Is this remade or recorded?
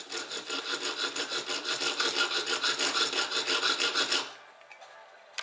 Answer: recorded